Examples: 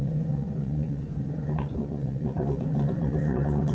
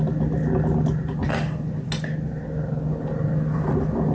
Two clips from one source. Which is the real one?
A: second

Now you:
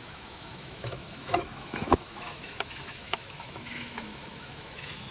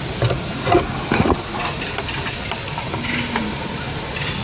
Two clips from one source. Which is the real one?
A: second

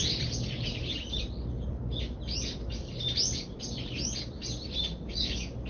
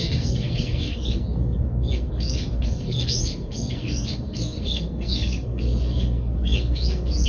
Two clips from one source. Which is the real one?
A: first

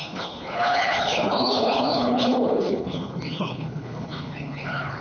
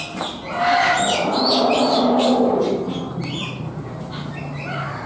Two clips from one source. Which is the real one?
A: second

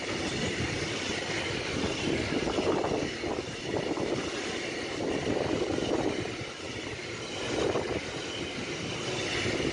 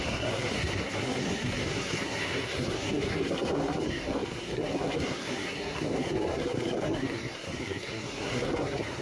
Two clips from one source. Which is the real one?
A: first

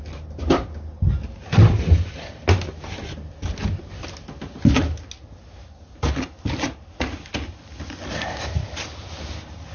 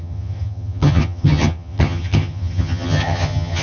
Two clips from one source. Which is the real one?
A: first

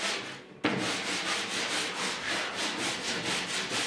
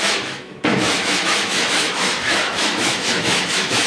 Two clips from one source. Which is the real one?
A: first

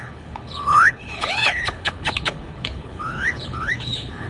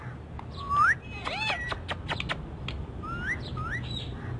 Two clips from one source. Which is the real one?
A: second